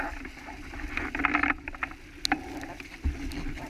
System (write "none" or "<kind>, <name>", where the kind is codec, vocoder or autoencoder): none